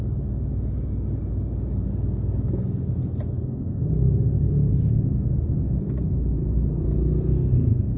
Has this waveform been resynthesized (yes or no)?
no